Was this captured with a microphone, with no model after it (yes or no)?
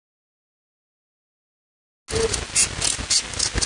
yes